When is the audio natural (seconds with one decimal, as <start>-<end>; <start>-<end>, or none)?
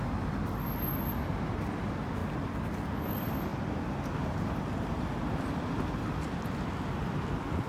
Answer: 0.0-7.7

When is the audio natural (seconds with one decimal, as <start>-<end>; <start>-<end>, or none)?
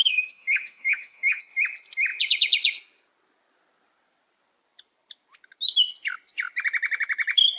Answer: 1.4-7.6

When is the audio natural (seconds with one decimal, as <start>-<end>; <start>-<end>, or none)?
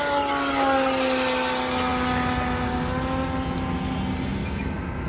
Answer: 0.0-5.1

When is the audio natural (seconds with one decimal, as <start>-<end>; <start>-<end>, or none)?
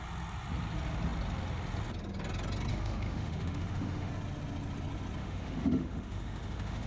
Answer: 0.0-2.7; 4.1-5.2